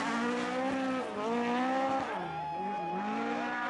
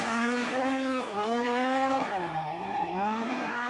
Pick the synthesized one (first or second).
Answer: second